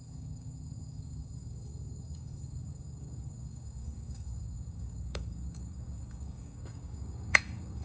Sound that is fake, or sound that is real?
fake